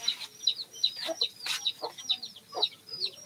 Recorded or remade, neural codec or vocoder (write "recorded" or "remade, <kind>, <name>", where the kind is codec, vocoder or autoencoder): recorded